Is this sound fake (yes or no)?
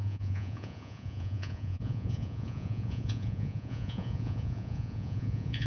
yes